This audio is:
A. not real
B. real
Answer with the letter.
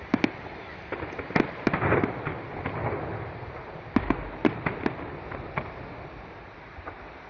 B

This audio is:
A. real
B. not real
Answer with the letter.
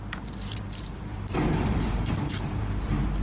B